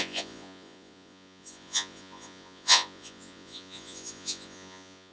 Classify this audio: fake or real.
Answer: fake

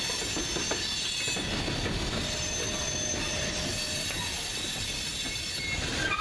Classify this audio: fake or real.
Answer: real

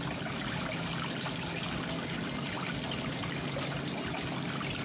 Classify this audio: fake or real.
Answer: real